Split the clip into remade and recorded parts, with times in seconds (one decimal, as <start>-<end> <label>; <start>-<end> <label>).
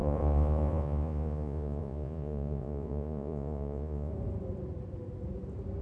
0.0-4.1 remade; 4.1-5.8 recorded